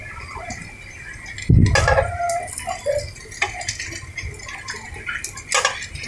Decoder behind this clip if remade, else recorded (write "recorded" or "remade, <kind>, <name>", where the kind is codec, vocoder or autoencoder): recorded